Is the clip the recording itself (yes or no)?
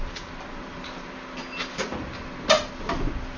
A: yes